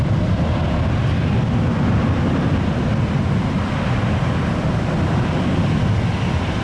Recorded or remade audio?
recorded